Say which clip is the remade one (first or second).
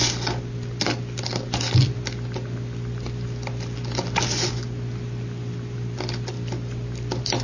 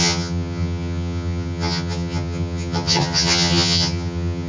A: second